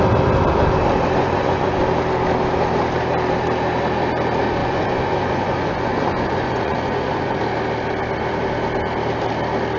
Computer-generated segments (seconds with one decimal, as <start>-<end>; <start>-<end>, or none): 1.2-1.8; 4.6-7.4

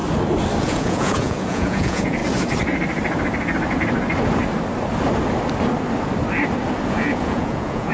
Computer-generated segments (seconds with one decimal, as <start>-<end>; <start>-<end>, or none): 0.6-2.2; 6.9-7.9

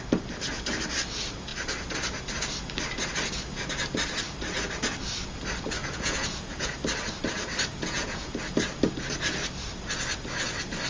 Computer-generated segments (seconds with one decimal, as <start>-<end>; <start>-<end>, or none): 5.8-6.7; 7.7-8.3

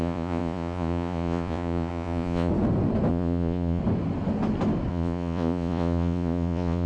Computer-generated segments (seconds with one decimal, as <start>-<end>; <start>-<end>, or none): 0.0-2.5; 3.1-3.8; 4.9-6.9

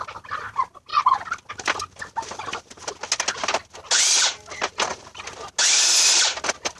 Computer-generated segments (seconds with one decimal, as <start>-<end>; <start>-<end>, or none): none

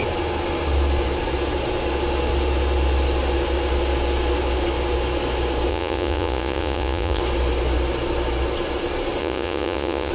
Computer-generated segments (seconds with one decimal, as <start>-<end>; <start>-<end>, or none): 5.7-7.2; 9.2-10.1